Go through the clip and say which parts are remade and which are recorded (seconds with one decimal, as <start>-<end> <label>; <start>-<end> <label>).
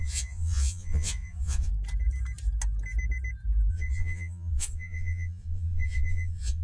0.0-1.7 remade; 1.7-3.7 recorded; 3.7-6.6 remade